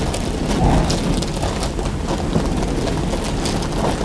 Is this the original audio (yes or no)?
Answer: yes